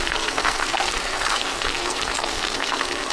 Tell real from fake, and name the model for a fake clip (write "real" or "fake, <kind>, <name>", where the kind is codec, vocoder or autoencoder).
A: fake, codec, SNAC